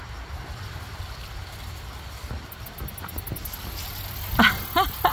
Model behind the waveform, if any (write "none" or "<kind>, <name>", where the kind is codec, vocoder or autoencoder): none